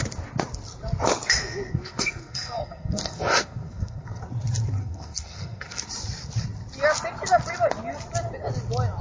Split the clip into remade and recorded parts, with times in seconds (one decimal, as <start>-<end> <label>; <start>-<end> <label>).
0.0-1.7 recorded; 1.7-4.2 remade; 4.2-4.8 recorded; 4.8-5.8 remade; 5.8-9.0 recorded